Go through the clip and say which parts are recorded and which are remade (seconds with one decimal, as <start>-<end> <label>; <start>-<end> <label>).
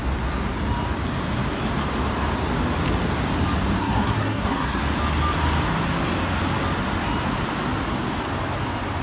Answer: 0.0-3.8 recorded; 3.8-4.8 remade; 4.8-9.0 recorded